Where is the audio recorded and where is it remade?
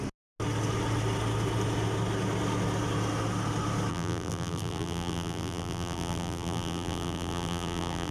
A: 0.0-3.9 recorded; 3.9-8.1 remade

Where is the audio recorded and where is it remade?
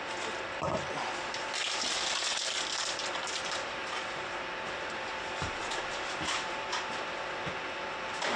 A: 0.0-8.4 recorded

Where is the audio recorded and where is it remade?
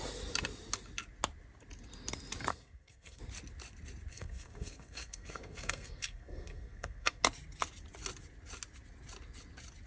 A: 0.0-2.5 recorded; 2.5-3.2 remade; 3.2-4.1 recorded; 4.1-7.2 remade; 7.2-9.9 recorded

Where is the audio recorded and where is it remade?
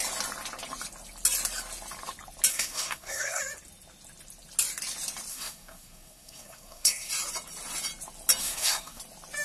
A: 0.0-2.5 recorded; 2.5-3.4 remade; 3.4-5.3 recorded; 5.3-7.1 remade; 7.1-8.4 recorded; 8.4-9.0 remade; 9.0-9.4 recorded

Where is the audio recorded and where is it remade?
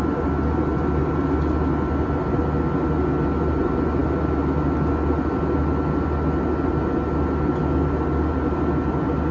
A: 0.0-9.3 recorded